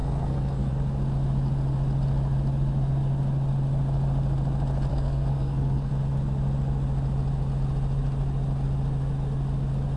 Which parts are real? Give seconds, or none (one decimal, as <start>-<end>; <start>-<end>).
0.7-4.9; 5.9-10.0